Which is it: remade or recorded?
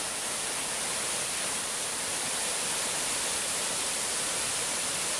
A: remade